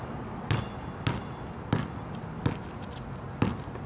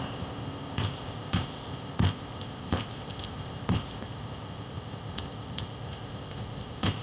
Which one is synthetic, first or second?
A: second